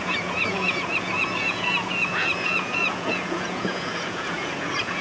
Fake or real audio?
fake